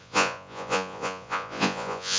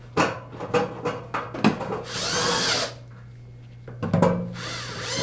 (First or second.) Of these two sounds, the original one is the second